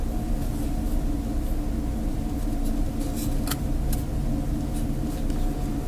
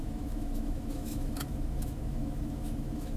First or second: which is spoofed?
second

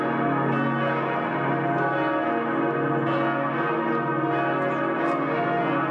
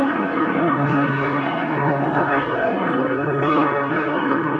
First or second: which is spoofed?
second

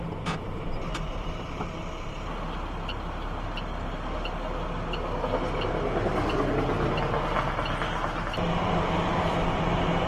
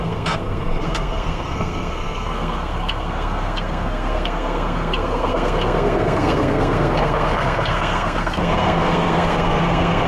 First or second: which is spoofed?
second